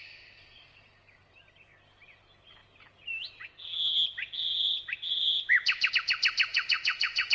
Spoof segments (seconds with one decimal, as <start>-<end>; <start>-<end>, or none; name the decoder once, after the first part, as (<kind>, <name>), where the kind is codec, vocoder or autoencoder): 6.5-7.3 (vocoder, Vocos)